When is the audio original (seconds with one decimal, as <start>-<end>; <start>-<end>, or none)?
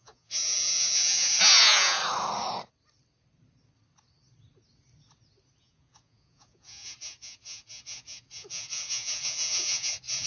2.0-5.6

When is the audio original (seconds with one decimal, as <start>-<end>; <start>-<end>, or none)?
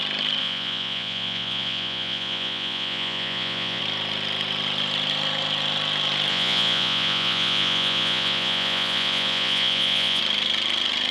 0.0-0.4; 3.8-6.3; 10.2-11.1